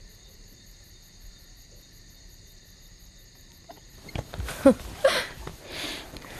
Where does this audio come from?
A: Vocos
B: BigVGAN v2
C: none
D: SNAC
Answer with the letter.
B